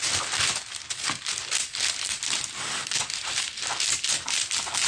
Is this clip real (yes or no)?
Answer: yes